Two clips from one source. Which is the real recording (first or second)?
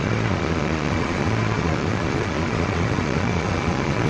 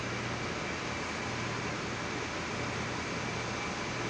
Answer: second